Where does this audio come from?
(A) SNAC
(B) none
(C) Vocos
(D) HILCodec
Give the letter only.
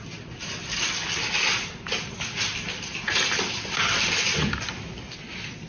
B